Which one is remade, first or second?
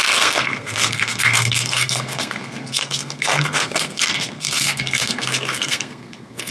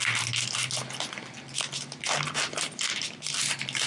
first